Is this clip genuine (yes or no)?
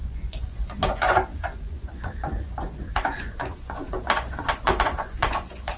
no